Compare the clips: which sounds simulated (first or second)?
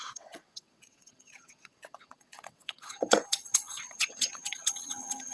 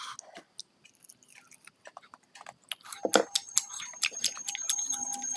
first